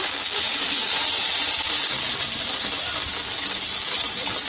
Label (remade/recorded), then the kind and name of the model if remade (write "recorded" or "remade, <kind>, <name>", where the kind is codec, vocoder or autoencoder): recorded